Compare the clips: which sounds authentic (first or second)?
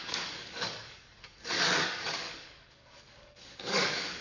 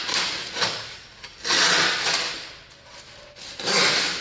second